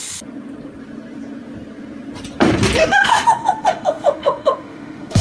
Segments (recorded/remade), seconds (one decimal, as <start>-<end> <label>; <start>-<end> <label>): 0.0-2.8 recorded; 2.8-5.2 remade